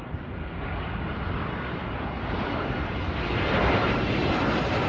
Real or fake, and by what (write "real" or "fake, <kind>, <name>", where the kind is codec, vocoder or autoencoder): real